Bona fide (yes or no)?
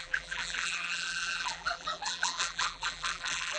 no